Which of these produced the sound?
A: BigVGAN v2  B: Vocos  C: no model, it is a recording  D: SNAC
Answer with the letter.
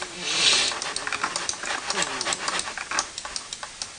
C